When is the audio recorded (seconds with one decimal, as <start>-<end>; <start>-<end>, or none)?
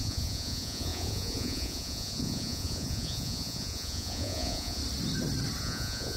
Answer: 4.8-5.6